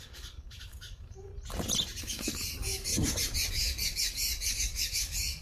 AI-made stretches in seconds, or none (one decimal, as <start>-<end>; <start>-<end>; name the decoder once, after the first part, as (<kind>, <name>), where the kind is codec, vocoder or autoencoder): 0.0-1.3 (codec, DAC); 2.0-2.9; 3.5-5.4